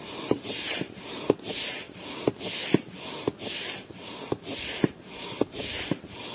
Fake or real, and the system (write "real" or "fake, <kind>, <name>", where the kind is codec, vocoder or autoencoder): real